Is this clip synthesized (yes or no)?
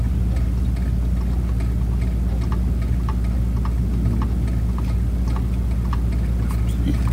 no